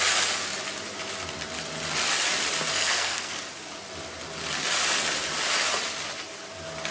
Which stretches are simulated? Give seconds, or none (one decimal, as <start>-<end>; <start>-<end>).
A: 2.7-3.4